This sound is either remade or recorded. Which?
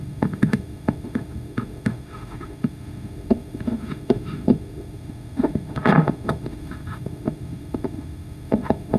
remade